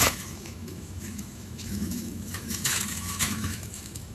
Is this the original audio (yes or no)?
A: no